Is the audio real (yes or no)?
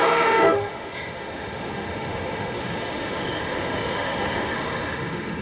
no